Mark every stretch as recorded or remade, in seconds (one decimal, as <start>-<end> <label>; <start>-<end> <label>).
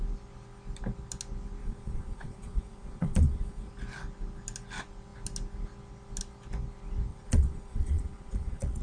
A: 0.0-1.6 recorded; 1.6-3.7 remade; 3.7-7.1 recorded; 7.1-8.8 remade